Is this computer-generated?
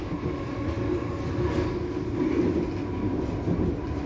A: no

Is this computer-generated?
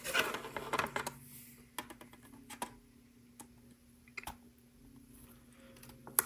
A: no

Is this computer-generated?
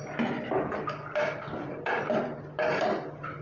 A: no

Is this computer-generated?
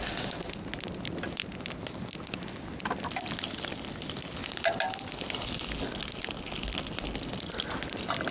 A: no